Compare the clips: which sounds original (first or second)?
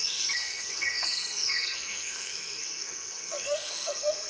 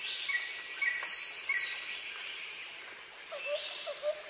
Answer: second